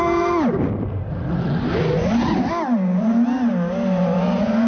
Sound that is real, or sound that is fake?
real